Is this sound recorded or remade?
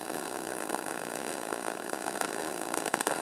remade